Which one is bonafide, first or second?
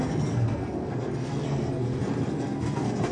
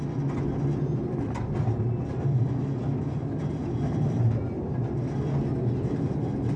second